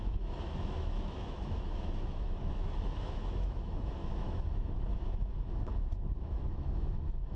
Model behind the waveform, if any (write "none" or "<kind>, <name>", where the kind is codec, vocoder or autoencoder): autoencoder, DAC-VAE